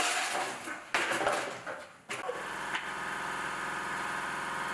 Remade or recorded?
recorded